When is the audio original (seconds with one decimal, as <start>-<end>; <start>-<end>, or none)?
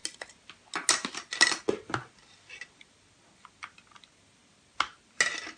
0.0-5.6